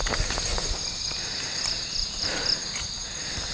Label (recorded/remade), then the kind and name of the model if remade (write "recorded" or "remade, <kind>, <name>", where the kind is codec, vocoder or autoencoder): recorded